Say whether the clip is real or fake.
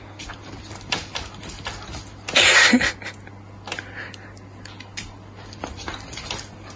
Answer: real